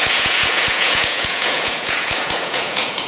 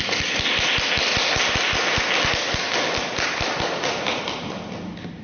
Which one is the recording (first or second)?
second